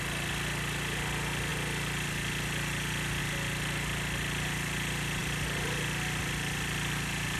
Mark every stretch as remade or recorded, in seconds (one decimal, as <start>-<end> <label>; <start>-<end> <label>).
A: 0.0-7.4 recorded